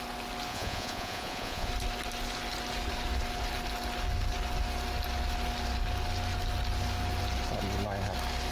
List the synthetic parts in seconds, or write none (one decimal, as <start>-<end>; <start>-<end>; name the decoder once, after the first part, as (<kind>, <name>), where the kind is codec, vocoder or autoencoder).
0.5-1.7 (vocoder, Vocos)